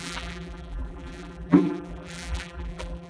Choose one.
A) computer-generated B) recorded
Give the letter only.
A